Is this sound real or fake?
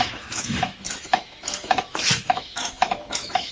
fake